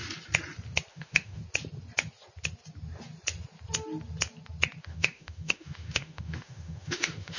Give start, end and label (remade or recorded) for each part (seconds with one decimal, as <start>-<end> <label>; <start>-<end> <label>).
0.0-0.9 recorded; 0.9-1.4 remade; 1.4-4.8 recorded; 4.8-7.4 remade